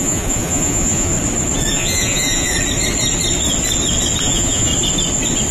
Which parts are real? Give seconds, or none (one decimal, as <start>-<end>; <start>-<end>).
1.1-1.7; 2.5-4.2; 4.7-5.5